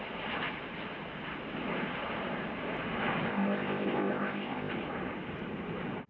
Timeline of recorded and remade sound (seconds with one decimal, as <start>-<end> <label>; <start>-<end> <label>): 0.0-3.3 recorded; 3.3-4.7 remade; 4.7-6.1 recorded